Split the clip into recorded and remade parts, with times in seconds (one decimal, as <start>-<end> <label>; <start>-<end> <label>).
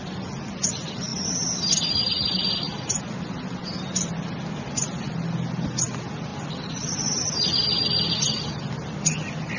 0.0-9.6 recorded